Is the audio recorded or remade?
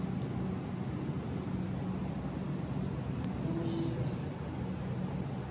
recorded